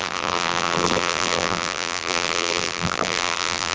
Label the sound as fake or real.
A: fake